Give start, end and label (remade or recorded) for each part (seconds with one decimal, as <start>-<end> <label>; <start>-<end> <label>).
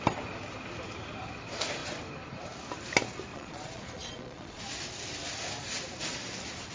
0.0-3.3 recorded; 3.3-4.6 remade; 4.6-6.7 recorded